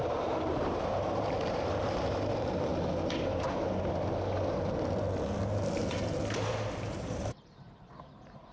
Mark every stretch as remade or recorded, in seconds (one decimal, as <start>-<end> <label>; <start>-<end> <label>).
0.0-2.7 remade; 2.7-6.9 recorded; 6.9-8.5 remade